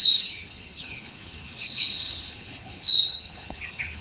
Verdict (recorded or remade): remade